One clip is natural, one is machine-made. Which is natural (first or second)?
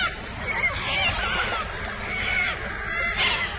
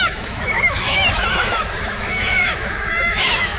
first